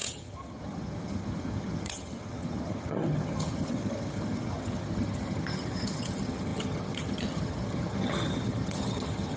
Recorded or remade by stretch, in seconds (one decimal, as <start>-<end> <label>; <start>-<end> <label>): 0.0-9.4 remade